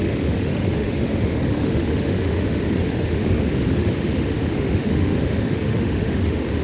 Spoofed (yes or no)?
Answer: yes